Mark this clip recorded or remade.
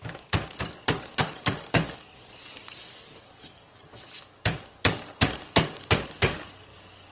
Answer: remade